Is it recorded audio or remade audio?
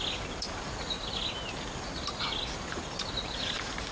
recorded